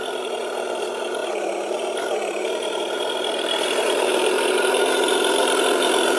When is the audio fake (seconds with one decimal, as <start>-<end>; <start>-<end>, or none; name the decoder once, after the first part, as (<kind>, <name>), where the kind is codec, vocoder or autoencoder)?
0.0-6.2 (vocoder, BigVGAN v2)